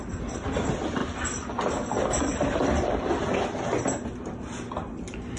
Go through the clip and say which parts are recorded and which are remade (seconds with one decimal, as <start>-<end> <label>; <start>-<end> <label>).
0.0-1.0 recorded; 1.0-1.5 remade; 1.5-5.4 recorded